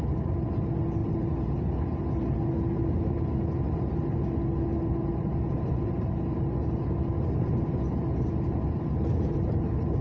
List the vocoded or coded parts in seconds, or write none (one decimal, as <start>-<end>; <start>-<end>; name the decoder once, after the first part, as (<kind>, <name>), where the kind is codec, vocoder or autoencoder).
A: none